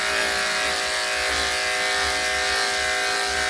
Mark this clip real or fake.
real